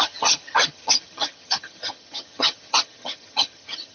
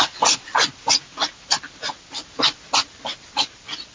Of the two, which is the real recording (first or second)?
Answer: second